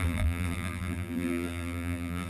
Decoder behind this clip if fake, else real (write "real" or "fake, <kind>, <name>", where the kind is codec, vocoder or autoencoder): fake, vocoder, BigVGAN v2